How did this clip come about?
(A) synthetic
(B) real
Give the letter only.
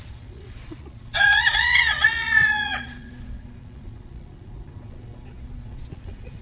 A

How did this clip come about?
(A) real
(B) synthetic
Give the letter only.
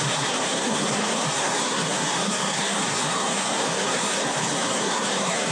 B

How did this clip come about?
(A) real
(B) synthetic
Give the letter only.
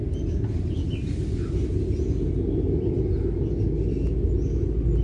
A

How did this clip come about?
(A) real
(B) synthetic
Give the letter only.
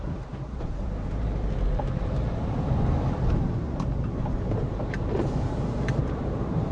B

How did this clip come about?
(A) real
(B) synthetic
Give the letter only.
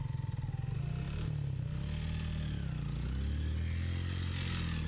A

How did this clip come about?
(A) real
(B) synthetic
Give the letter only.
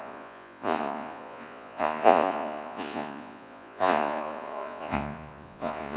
B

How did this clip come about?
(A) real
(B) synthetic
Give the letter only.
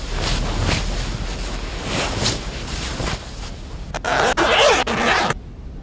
A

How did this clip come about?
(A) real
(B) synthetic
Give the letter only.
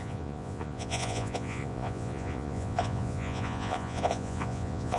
B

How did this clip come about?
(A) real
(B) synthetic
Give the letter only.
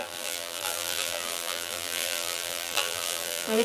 B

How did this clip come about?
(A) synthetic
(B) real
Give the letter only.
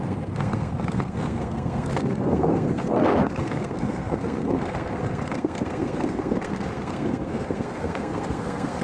A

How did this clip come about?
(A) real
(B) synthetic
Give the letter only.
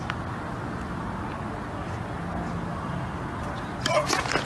A